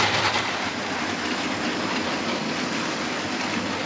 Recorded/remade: recorded